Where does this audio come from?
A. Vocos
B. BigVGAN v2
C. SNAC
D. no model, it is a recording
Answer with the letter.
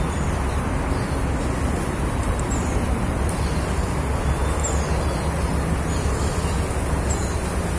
D